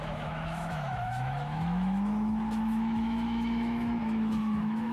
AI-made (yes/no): yes